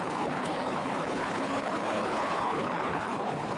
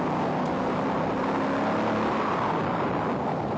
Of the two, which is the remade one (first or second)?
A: first